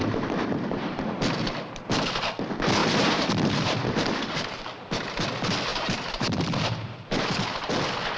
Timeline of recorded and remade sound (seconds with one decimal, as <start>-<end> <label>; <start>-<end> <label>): 0.0-1.0 remade; 1.0-2.8 recorded; 2.8-4.6 remade; 4.6-5.7 recorded; 5.7-7.7 remade; 7.7-8.2 recorded